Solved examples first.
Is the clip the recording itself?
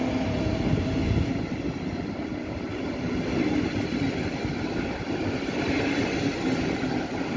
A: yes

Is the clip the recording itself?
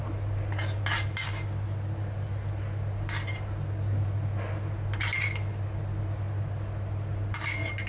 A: yes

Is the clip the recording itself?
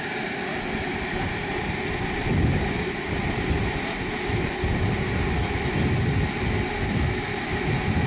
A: yes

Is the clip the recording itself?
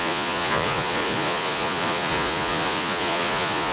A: no